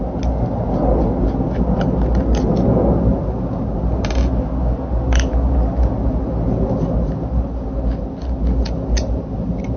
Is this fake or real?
real